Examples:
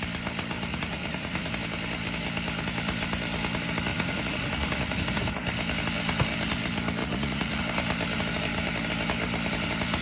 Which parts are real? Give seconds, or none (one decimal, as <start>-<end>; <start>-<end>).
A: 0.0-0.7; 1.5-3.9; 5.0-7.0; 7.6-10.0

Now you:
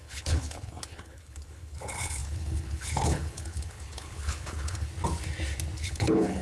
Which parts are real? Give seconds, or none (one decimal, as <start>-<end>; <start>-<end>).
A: 4.9-5.8

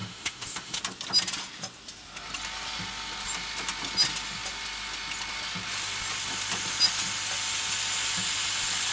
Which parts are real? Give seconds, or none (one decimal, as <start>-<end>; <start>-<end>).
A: 0.8-8.9

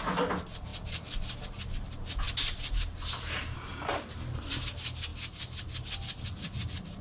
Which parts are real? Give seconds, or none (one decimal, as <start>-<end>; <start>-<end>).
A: 0.0-7.0

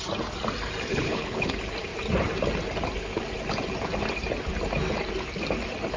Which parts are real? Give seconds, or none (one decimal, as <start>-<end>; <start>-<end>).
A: 0.0-0.9; 1.5-6.0

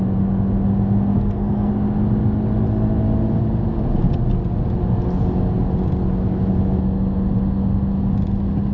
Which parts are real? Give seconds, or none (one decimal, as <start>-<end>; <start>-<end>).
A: 0.0-1.1; 1.7-8.7